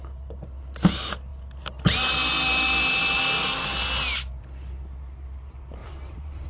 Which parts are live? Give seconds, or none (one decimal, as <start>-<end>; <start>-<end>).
0.0-5.8

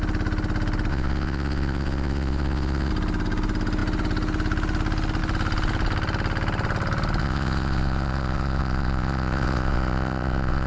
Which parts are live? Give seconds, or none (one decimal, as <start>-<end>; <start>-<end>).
0.0-0.9; 2.9-7.2

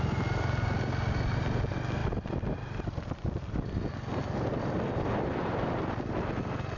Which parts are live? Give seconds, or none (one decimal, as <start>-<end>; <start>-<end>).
0.0-6.8

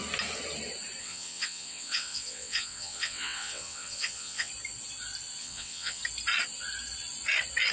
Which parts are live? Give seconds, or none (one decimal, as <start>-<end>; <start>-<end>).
0.0-1.0; 4.5-5.4; 6.0-7.7